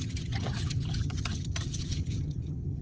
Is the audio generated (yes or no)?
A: yes